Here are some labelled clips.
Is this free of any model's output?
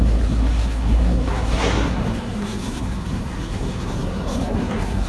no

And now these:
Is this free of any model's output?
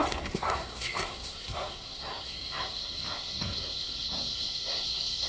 no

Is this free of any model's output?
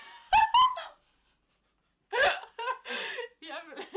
yes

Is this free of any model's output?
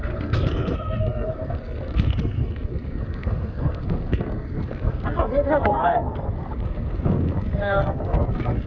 no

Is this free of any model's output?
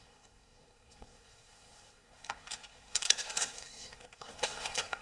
no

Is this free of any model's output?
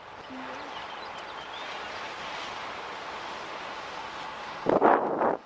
yes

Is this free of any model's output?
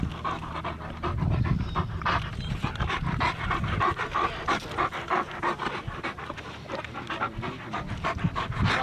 yes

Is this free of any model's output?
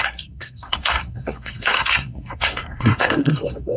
no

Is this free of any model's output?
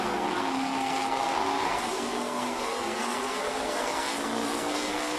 no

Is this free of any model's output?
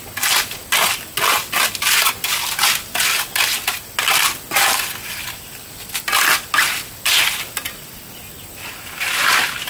yes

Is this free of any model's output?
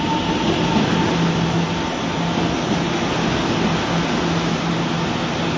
yes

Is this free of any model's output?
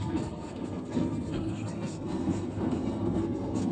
no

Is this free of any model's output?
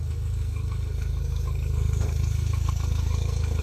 no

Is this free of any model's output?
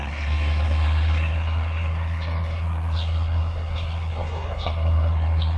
no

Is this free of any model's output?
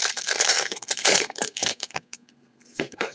no